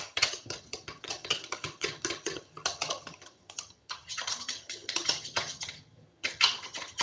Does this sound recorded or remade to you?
remade